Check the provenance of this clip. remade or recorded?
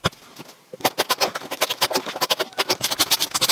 recorded